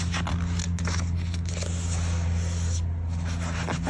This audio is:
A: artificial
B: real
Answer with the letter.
B